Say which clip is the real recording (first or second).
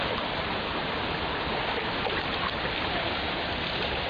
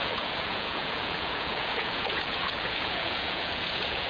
first